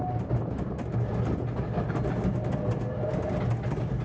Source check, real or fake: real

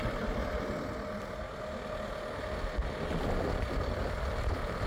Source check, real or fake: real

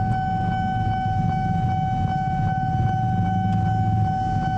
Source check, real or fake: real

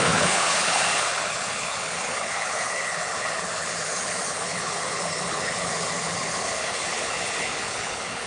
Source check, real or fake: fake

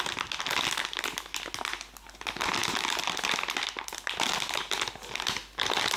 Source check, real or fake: real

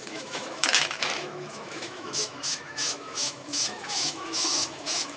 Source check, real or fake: fake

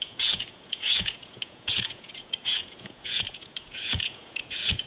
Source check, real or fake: fake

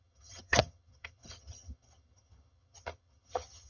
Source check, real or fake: fake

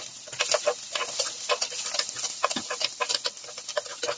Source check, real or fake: real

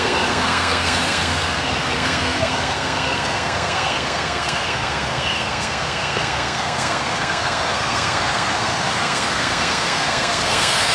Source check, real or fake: fake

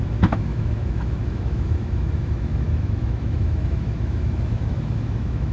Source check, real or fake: fake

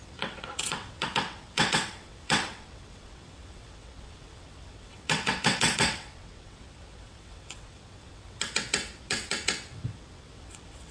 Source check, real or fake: fake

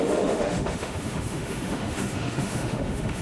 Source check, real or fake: fake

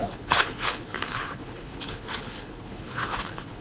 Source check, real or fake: fake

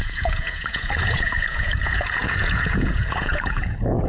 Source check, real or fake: fake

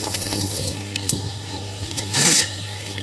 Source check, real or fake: fake